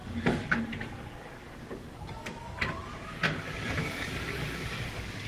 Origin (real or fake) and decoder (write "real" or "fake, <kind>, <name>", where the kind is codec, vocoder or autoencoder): fake, codec, DAC